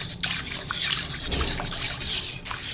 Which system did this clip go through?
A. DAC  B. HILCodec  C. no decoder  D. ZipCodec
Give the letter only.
C